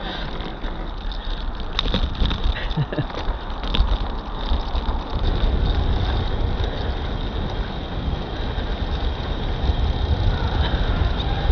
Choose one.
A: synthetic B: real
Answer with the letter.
B